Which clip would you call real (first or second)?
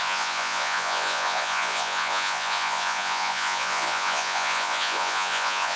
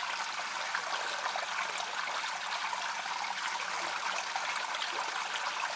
second